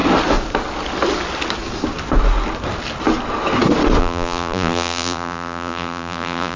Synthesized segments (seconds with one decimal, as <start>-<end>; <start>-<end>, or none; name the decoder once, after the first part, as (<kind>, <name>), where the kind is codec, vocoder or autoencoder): 4.0-6.6 (vocoder, BigVGAN v2)